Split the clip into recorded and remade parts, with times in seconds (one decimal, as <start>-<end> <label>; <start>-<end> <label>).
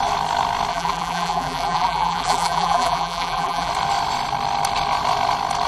0.0-0.7 recorded; 0.7-3.7 remade; 3.7-5.7 recorded